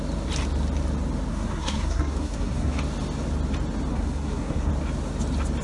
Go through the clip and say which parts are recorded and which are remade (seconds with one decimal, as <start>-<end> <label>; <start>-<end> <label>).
0.0-1.3 recorded; 1.3-2.8 remade; 2.8-3.9 recorded; 3.9-4.7 remade; 4.7-5.6 recorded